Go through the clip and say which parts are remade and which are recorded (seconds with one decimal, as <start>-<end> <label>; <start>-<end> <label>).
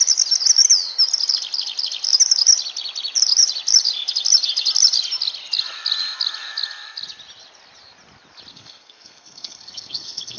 0.0-8.5 recorded; 8.5-10.4 remade